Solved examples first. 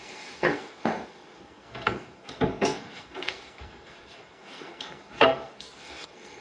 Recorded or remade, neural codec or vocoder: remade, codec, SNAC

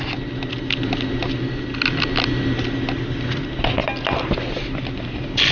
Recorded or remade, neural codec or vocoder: recorded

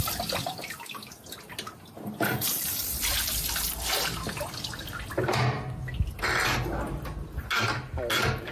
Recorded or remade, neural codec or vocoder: recorded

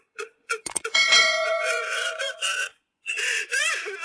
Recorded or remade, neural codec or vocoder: remade, vocoder, Vocos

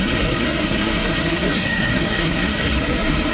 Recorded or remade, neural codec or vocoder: remade, codec, SNAC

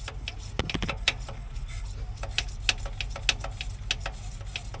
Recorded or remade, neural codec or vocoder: recorded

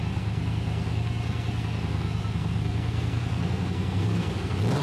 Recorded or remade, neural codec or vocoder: remade, codec, SNAC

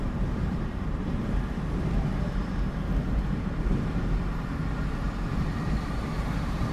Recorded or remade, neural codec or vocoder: remade, vocoder, BigVGAN v2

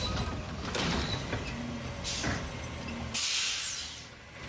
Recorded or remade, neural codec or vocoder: recorded